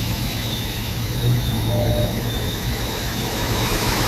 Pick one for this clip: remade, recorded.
remade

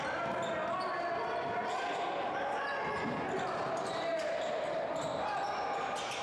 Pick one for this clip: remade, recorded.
recorded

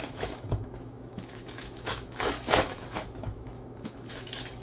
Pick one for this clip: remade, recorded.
remade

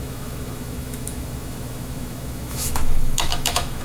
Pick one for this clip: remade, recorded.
remade